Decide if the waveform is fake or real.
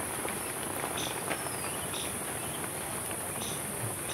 real